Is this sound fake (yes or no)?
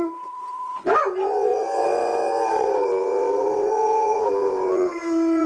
yes